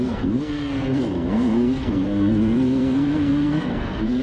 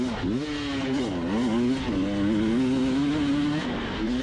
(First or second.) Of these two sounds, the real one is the second